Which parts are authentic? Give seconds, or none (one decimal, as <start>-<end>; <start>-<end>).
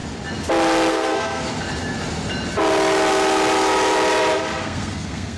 0.0-0.9; 1.4-4.6